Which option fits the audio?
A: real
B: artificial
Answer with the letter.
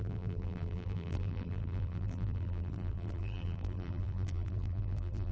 B